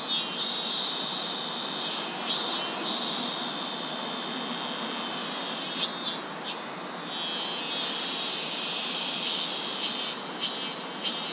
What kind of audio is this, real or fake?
real